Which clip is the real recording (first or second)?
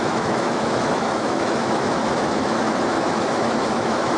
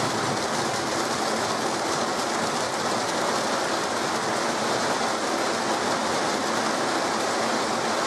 second